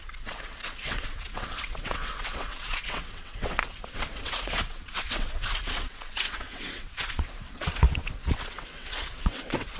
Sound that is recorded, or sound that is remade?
remade